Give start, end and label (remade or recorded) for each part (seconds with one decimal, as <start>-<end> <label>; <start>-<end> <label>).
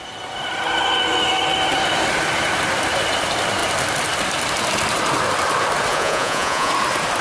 0.0-5.9 recorded; 5.9-6.7 remade; 6.7-7.2 recorded